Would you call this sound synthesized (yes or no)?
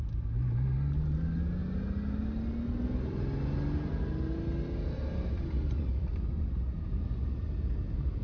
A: no